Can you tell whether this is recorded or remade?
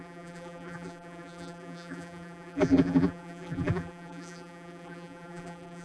remade